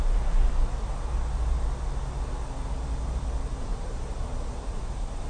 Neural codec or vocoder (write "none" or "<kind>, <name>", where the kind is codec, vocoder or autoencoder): none